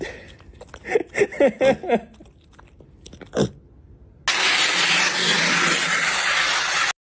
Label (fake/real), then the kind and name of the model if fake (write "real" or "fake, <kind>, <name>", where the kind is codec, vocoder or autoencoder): real